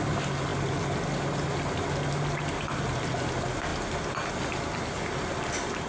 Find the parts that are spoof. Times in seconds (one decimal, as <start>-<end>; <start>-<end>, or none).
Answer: none